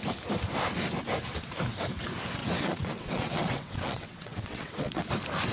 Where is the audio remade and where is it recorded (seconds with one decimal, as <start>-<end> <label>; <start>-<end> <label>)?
0.0-2.4 recorded; 2.4-5.1 remade; 5.1-5.5 recorded